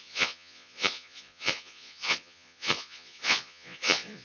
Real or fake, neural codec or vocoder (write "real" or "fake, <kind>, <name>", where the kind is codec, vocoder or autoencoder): fake, vocoder, Vocos